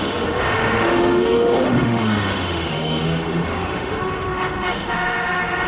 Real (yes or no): no